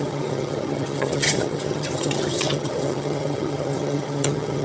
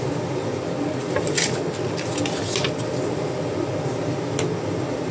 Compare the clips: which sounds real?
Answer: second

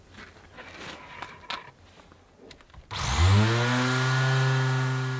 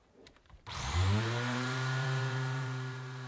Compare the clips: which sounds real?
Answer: first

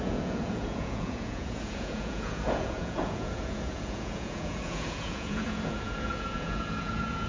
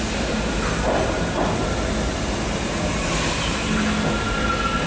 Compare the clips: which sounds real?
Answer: second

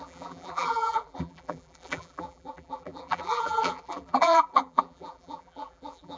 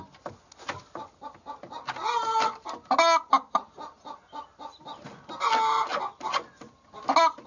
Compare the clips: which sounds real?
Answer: second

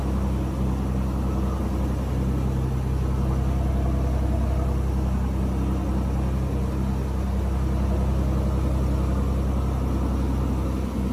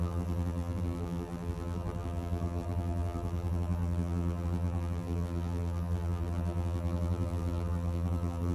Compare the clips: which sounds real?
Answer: first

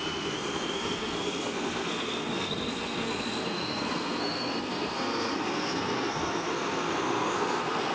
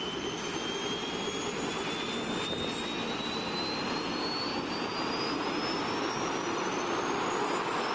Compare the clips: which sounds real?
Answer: second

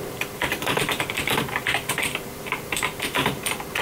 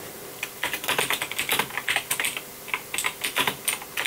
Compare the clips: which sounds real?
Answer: second